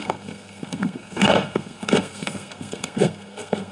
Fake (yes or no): yes